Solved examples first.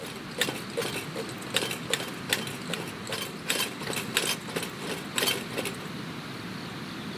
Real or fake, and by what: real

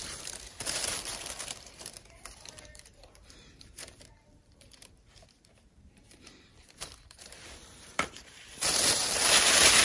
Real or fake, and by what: fake, vocoder, BigVGAN v2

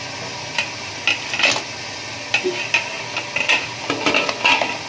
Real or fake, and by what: real